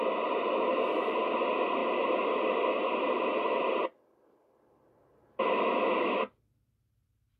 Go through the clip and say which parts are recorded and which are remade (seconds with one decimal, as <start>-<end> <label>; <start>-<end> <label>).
0.0-7.4 remade